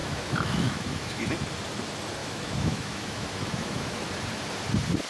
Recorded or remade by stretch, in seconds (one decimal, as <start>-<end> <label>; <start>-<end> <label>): 0.0-1.3 remade; 1.3-2.2 recorded; 2.2-4.1 remade; 4.1-5.1 recorded